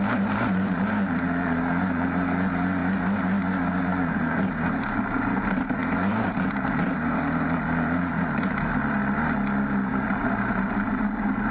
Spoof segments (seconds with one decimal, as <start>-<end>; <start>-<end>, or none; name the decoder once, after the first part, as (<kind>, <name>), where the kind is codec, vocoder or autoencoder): 0.0-2.8 (vocoder, BigVGAN v2); 3.8-9.0; 9.9-11.5